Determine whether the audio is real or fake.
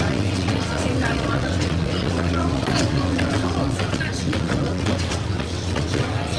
fake